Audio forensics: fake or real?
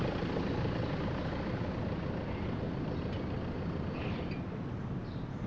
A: real